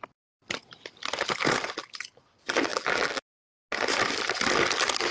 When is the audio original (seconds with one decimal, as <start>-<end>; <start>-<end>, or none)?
0.0-2.7; 3.2-5.1